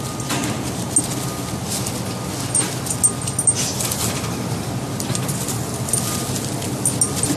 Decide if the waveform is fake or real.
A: real